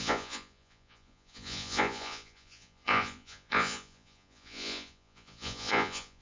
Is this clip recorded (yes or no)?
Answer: no